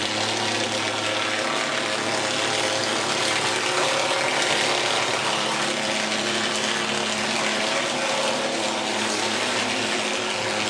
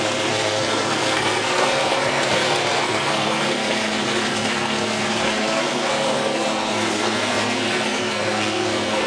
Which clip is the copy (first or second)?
second